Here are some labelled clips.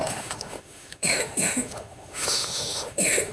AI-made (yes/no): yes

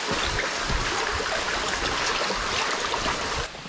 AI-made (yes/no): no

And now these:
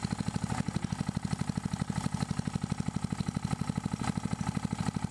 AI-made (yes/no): no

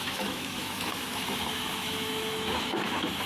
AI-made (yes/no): yes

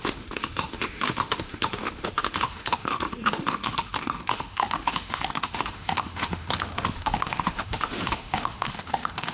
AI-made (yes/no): yes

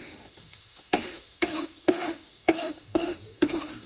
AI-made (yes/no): yes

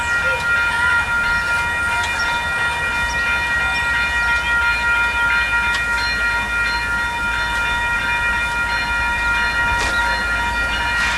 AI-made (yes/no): no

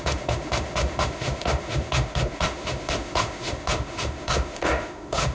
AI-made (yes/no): yes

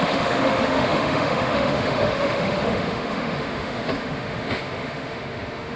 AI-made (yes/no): yes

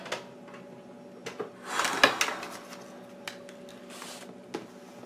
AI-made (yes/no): no